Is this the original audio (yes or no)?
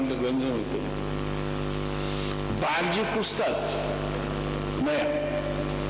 yes